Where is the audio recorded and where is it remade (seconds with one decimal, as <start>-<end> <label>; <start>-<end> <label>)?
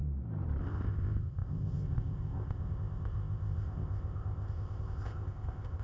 0.0-0.6 recorded; 0.6-5.8 remade